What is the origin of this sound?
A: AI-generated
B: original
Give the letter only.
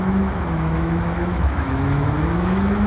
A